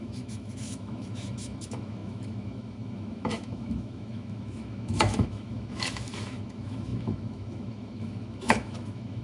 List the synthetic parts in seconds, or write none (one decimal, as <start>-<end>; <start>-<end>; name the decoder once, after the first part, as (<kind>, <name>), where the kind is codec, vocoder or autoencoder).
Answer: 0.0-9.2 (autoencoder, DAC-VAE)